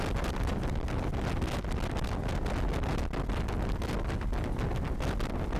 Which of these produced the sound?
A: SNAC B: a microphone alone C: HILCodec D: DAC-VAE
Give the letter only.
B